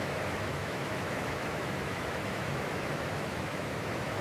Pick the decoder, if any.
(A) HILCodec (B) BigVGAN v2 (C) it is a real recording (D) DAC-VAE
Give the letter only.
D